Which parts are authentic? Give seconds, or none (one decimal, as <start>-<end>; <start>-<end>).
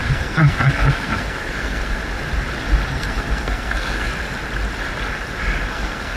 2.0-2.9; 4.1-5.7